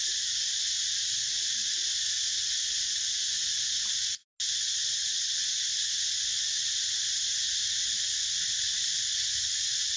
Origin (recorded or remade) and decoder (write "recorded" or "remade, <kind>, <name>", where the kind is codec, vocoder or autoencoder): recorded